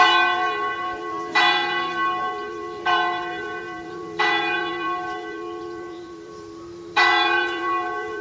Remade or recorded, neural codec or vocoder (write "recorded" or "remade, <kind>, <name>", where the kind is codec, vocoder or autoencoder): remade, vocoder, BigVGAN v2